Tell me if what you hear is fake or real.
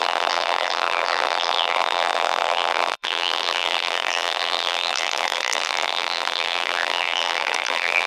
fake